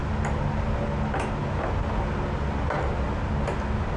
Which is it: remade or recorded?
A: recorded